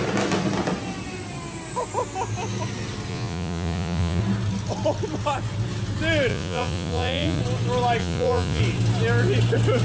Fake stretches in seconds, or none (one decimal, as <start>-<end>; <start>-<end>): 3.1-4.2; 6.3-7.4; 8.0-8.6